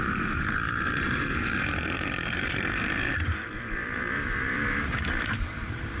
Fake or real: fake